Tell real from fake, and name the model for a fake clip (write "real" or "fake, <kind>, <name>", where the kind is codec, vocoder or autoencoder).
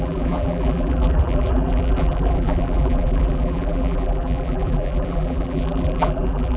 fake, vocoder, BigVGAN v2